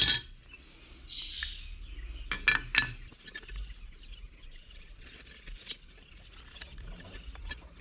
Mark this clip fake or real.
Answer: real